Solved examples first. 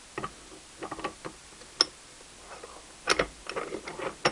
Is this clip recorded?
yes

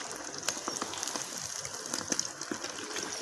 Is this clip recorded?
yes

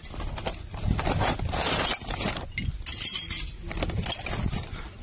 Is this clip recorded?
yes